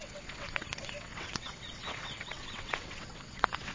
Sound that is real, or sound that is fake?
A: fake